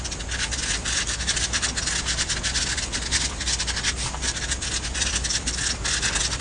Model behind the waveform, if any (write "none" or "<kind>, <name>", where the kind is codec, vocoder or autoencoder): none